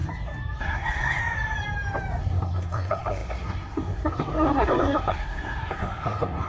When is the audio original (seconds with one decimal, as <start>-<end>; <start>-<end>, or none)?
0.0-0.6; 1.2-2.2

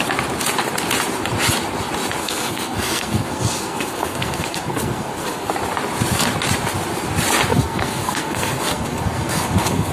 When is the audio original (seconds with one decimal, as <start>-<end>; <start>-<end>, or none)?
0.0-2.2; 5.5-7.5

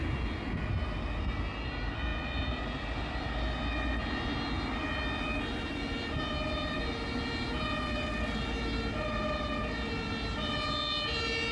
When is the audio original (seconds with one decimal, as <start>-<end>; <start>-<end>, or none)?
0.0-11.5

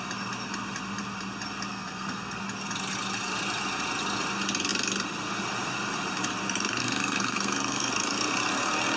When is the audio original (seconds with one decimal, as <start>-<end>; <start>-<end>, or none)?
0.0-1.7; 2.4-6.8; 7.9-9.0

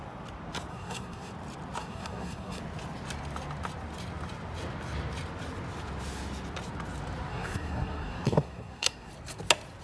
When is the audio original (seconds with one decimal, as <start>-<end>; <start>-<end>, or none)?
0.0-0.7; 1.3-1.8; 2.6-7.3; 9.1-9.8